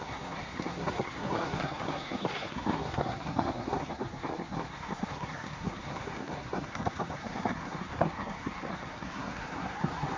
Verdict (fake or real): fake